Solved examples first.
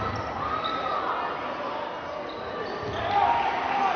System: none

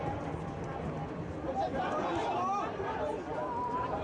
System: none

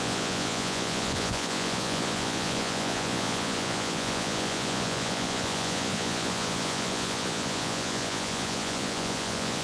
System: vocoder, Vocos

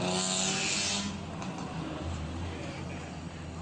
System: none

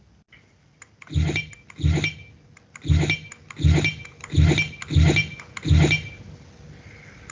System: none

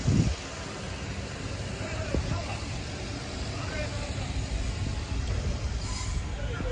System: none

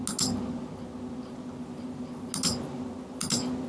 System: none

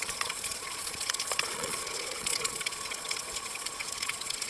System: vocoder, Vocos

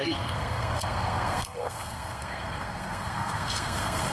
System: codec, SNAC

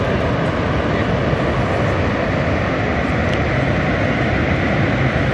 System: none